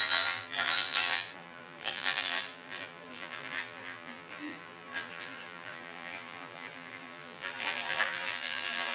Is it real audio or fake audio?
fake